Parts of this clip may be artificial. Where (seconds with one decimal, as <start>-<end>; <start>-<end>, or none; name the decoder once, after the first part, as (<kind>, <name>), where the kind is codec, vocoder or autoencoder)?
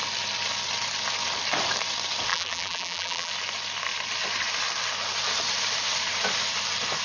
2.3-3.3 (vocoder, BigVGAN v2)